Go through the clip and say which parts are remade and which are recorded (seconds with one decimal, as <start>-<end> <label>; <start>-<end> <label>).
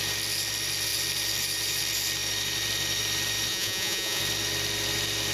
0.0-3.5 recorded; 3.5-4.2 remade; 4.2-5.3 recorded